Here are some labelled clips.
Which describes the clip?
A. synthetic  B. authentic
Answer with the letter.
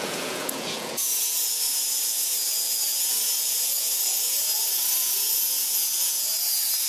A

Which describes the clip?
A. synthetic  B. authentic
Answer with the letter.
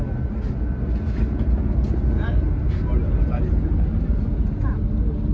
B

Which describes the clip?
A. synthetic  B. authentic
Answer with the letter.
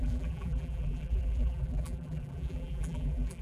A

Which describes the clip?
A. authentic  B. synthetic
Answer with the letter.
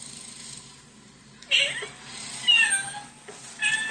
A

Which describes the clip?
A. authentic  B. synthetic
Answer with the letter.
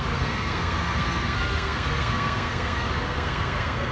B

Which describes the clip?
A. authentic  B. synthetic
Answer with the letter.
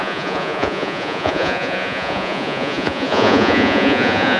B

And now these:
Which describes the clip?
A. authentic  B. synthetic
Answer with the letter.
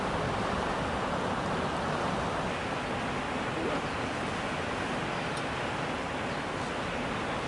A